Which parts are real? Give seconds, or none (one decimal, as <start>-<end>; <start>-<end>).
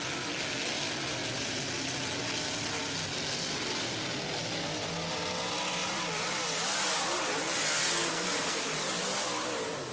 0.0-8.0; 8.6-9.9